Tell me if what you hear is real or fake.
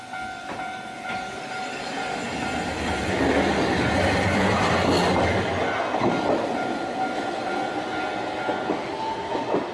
real